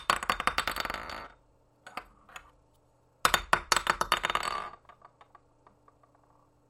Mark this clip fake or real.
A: real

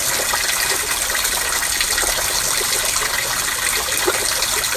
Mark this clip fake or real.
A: real